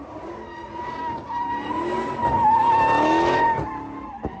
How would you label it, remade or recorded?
recorded